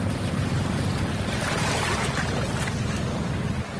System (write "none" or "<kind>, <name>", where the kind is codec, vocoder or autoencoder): none